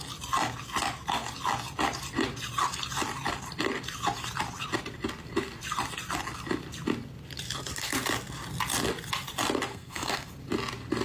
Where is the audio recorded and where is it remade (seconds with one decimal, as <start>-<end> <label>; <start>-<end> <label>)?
0.0-9.7 recorded; 9.7-10.3 remade; 10.3-11.0 recorded